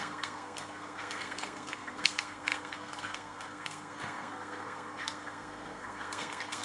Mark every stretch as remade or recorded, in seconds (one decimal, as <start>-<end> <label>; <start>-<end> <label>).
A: 0.0-6.6 remade